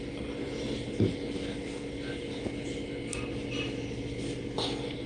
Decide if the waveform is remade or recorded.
recorded